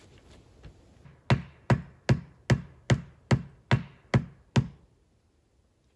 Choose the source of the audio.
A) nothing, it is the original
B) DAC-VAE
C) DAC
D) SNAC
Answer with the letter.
A